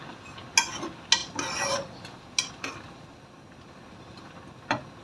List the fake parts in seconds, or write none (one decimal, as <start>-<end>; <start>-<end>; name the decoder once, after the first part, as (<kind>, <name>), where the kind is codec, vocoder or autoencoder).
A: none